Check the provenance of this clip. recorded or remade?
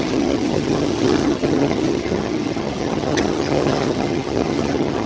remade